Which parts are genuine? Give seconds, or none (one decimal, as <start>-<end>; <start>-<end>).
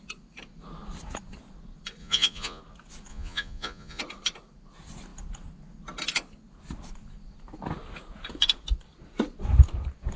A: 0.0-2.0; 2.6-3.1; 4.0-10.2